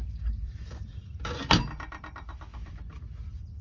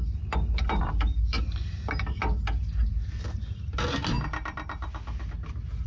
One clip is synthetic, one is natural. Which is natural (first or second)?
second